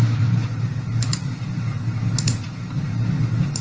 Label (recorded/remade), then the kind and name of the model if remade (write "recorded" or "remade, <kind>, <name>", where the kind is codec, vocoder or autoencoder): recorded